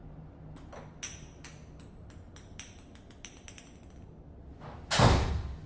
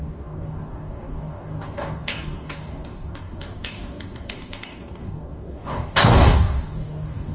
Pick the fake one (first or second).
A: second